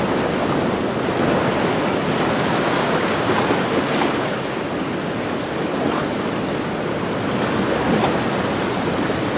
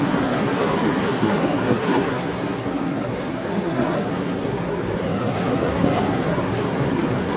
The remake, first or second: second